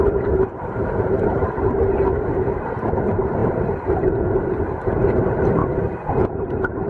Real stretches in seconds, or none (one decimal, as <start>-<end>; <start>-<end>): 5.6-6.2